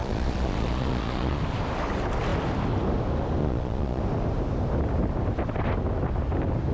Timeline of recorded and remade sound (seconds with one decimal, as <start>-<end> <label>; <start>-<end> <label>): 0.0-1.4 remade; 1.4-3.4 recorded; 3.4-4.0 remade; 4.0-6.7 recorded